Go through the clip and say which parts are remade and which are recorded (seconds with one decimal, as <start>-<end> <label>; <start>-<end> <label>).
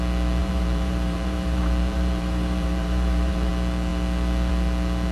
0.0-0.4 recorded; 0.4-3.5 remade; 3.5-5.1 recorded